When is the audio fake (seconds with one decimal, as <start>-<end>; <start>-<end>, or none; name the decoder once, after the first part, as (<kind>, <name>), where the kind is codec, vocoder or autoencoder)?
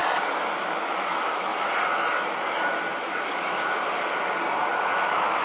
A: 0.7-1.5 (autoencoder, DAC-VAE); 4.7-5.4